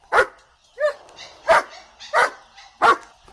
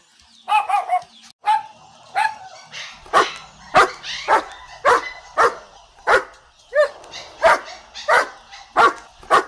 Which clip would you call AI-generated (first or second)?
first